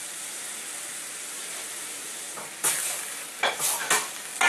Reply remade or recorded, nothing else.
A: recorded